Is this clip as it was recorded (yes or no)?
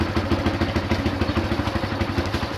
yes